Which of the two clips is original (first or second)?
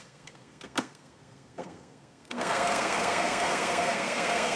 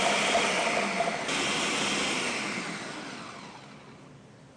second